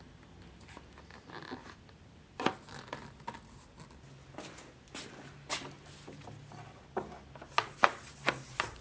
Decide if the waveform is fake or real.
real